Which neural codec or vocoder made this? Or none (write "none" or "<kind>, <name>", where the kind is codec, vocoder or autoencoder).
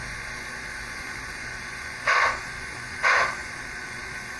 vocoder, Vocos